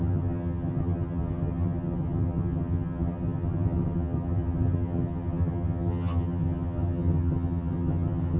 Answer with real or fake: fake